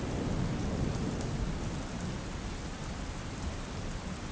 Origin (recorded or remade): recorded